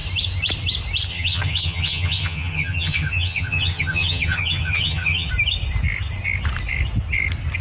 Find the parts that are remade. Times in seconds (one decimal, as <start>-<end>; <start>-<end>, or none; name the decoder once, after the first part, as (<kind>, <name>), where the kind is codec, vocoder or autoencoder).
1.1-5.3 (vocoder, HiFi-GAN)